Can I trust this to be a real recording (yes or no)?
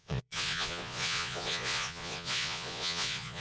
no